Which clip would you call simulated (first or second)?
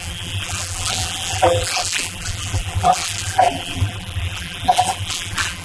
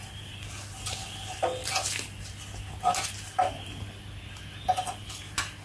first